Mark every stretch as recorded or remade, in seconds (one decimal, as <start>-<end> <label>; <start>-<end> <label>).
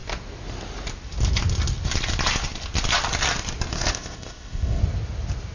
0.0-3.9 recorded; 3.9-4.8 remade; 4.8-5.5 recorded